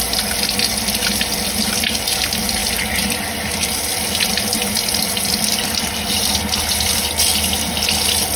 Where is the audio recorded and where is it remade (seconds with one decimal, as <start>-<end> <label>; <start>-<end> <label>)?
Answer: 0.0-8.4 recorded